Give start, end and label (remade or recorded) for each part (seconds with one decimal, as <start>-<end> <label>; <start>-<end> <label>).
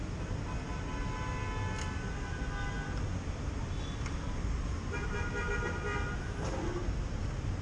0.0-7.6 recorded